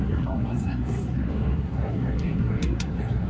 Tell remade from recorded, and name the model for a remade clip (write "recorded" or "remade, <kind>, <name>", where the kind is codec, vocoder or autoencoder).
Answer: remade, codec, SNAC